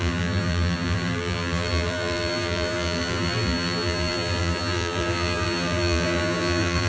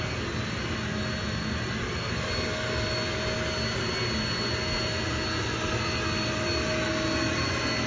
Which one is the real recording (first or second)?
second